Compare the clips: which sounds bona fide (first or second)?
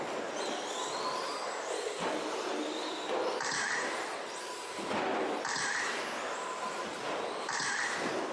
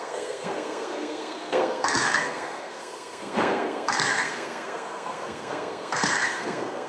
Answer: first